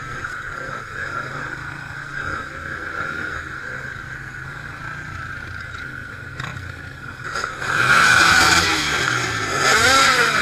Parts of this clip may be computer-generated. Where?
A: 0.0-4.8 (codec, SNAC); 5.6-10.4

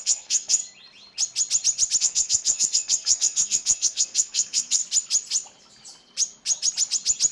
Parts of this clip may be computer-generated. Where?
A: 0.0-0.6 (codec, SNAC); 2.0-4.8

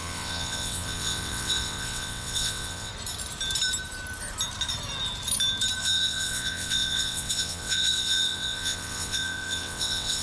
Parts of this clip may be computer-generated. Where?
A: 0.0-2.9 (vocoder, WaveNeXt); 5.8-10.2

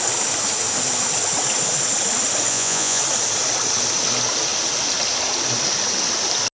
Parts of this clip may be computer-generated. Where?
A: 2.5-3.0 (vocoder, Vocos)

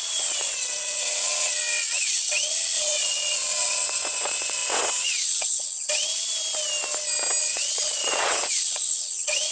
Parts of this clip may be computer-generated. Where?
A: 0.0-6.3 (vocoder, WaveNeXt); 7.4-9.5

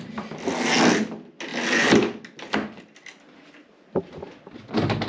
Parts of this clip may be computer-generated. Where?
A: none